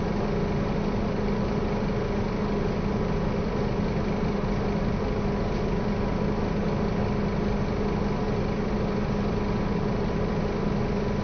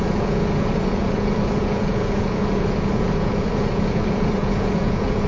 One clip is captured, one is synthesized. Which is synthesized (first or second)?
second